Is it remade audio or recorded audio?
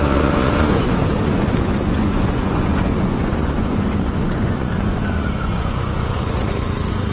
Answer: remade